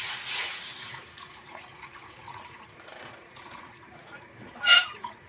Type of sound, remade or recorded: remade